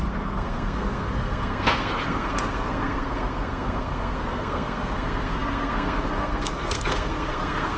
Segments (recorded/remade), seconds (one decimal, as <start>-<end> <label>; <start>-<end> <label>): 0.0-7.8 remade